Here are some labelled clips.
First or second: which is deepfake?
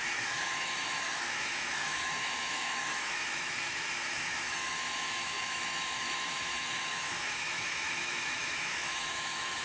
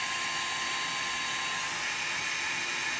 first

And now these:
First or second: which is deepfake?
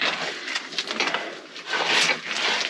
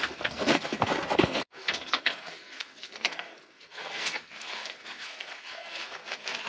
second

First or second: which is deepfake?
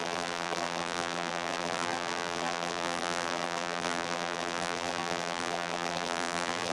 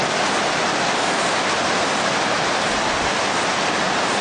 first